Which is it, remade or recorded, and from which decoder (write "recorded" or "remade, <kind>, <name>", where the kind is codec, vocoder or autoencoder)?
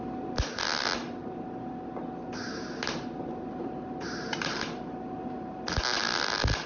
recorded